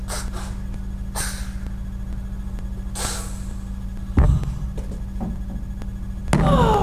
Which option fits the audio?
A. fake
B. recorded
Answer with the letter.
B